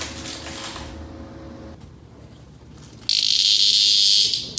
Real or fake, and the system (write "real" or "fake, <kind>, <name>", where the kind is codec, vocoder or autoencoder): real